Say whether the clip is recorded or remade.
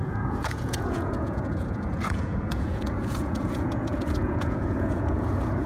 remade